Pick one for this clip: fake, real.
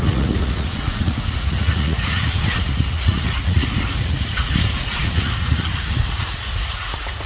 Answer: fake